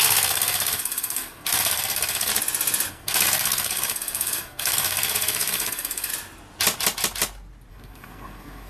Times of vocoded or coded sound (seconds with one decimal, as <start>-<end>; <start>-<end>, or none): 0.0-2.3; 2.9-6.1; 7.7-8.7

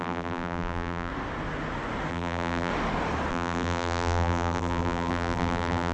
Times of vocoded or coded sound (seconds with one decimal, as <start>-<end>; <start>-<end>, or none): 0.0-1.1; 2.1-2.7; 3.3-5.9

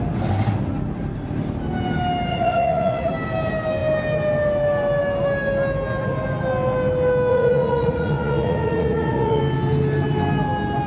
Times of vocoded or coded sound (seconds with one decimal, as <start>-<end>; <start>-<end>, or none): 2.3-3.1; 7.3-9.4

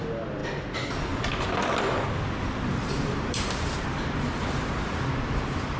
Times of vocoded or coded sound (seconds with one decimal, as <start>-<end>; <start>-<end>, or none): 2.7-5.1

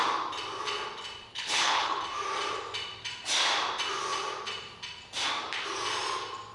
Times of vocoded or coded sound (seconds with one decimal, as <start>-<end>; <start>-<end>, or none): 1.3-2.0

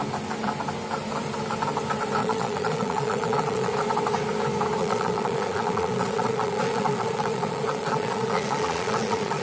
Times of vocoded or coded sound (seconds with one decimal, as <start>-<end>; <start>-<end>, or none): 2.2-3.7; 4.8-9.4